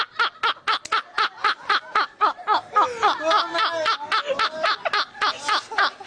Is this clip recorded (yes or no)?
yes